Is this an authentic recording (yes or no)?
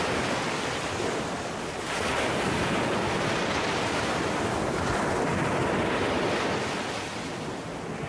yes